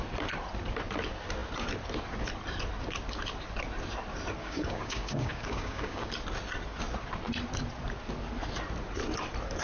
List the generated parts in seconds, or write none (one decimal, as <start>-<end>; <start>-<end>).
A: 4.4-6.1